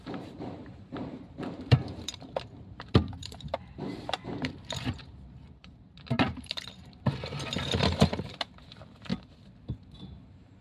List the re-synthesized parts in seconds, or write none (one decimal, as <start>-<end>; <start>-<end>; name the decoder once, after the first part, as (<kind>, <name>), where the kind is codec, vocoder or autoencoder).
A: 0.0-9.1 (vocoder, BigVGAN v2); 10.0-10.6